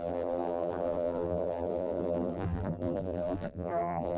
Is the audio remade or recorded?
remade